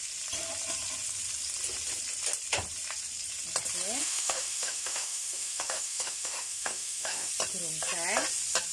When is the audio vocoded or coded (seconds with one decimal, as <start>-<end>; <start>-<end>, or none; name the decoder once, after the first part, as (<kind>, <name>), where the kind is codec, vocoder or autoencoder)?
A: 4.0-7.3 (autoencoder, DAC-VAE)